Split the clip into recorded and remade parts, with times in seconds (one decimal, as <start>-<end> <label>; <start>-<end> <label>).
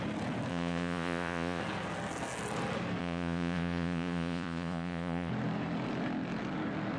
0.0-0.5 recorded; 0.5-1.6 remade; 1.6-3.0 recorded; 3.0-5.3 remade; 5.3-7.0 recorded